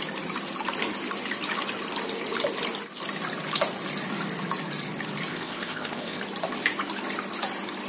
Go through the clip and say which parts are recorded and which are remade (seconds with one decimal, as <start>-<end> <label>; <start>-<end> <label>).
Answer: 0.0-5.3 recorded; 5.3-6.2 remade; 6.2-7.9 recorded